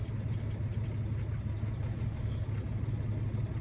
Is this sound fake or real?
real